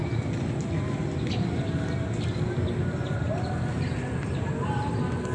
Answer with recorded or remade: recorded